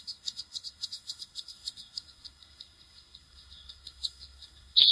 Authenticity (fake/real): fake